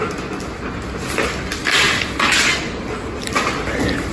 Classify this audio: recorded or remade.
recorded